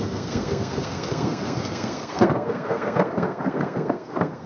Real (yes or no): no